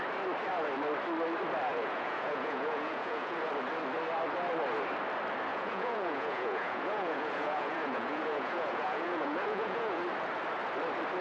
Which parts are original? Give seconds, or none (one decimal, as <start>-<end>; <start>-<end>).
0.0-1.7; 3.5-5.5; 10.0-11.2